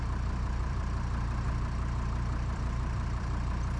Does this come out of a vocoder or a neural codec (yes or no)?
yes